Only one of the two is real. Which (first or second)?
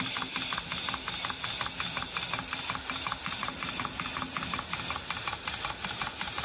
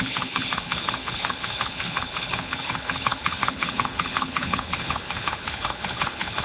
first